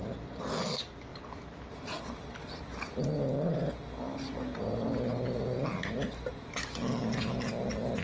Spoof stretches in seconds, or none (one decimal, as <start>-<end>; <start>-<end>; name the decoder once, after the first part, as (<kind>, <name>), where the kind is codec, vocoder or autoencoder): none